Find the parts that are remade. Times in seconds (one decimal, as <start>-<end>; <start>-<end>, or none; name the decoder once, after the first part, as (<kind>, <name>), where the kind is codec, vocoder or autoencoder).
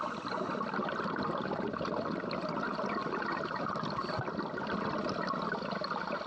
none